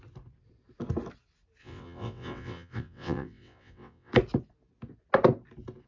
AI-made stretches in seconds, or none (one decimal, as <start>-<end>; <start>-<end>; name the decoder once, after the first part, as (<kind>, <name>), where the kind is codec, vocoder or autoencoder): 1.6-4.1 (vocoder, WaveNeXt)